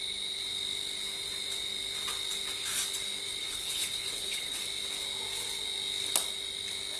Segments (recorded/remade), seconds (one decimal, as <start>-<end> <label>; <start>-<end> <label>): 0.0-3.4 recorded; 3.4-4.6 remade; 4.6-7.0 recorded